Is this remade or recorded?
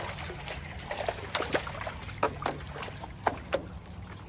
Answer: recorded